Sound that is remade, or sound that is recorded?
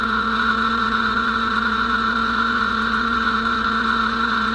remade